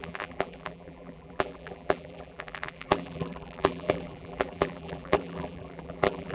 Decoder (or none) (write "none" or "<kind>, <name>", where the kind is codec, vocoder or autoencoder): vocoder, BigVGAN v2